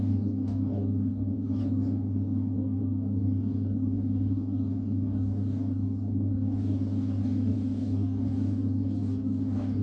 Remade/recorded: remade